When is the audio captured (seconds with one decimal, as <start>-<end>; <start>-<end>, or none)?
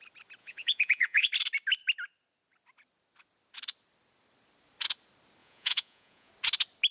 0.0-0.4; 1.3-5.4; 6.3-6.9